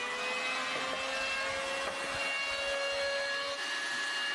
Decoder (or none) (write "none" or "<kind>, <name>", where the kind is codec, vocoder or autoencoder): none